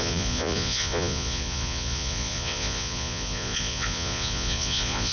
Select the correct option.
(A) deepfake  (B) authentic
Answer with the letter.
A